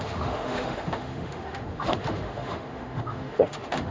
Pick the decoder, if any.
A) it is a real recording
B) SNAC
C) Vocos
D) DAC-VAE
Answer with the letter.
D